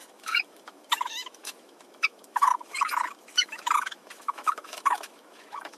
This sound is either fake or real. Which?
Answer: fake